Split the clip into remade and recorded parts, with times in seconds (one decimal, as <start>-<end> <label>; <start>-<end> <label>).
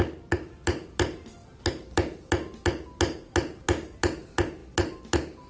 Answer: 0.0-5.5 recorded